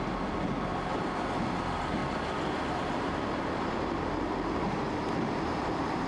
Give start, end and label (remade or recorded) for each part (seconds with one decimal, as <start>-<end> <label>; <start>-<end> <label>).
0.0-2.0 remade; 2.0-2.7 recorded; 2.7-6.1 remade